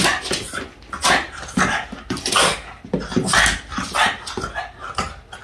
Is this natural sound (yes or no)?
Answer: yes